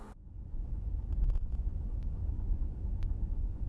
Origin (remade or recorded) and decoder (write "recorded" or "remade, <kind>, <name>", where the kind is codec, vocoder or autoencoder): remade, vocoder, Vocos